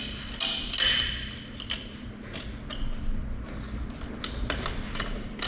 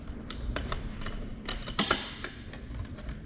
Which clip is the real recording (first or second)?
first